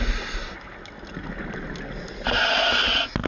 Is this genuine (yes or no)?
yes